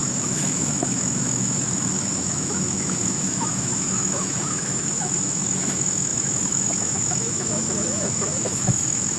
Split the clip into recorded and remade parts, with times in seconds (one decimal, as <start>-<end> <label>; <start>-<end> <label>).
0.0-9.2 remade